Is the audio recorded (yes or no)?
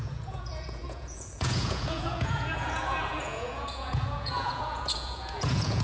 no